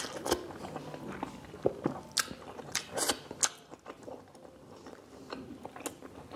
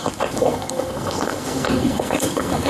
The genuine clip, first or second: first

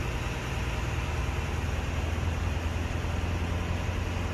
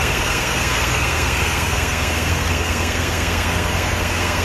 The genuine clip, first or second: first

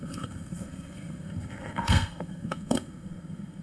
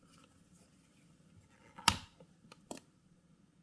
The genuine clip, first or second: second